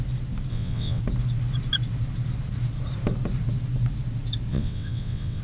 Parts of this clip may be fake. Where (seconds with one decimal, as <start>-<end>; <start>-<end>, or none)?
0.5-1.0; 4.5-5.4

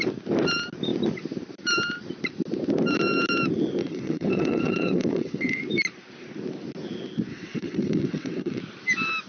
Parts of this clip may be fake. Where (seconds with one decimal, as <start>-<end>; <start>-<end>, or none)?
3.8-5.6; 7.3-8.6

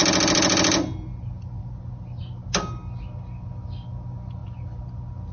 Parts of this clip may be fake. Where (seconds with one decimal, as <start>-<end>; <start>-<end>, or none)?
none

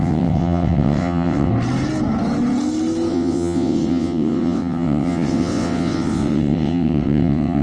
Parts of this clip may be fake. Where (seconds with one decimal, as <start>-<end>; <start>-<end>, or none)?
0.0-1.5; 3.1-7.6

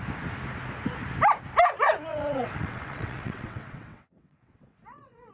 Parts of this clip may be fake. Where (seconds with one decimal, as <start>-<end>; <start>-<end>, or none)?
2.1-5.3

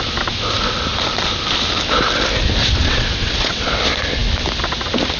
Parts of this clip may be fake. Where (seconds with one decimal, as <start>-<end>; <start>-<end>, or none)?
2.6-3.8

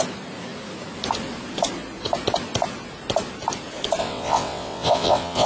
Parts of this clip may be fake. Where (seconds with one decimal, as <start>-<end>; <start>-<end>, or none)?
4.0-5.5